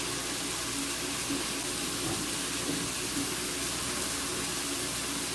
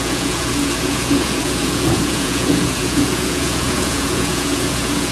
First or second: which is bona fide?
first